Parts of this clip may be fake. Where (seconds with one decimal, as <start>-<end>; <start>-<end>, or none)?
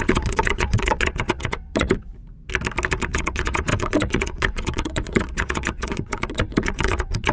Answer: 0.0-2.1; 3.0-7.3